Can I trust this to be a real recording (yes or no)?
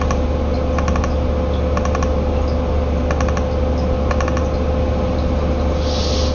yes